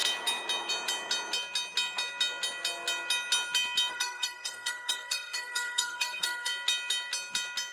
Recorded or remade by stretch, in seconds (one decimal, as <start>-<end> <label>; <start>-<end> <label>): 0.0-3.9 recorded; 3.9-6.5 remade; 6.5-7.7 recorded